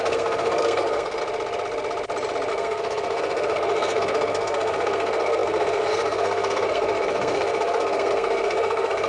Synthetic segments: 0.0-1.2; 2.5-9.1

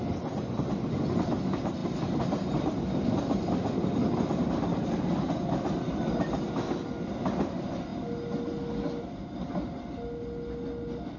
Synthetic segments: none

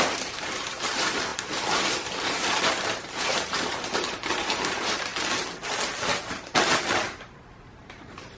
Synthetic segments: 0.0-5.1; 7.7-8.4

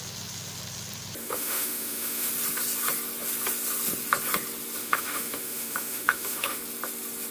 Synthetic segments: 1.2-2.3; 4.8-6.6